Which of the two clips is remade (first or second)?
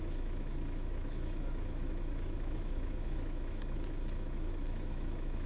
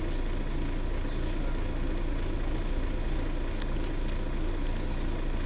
first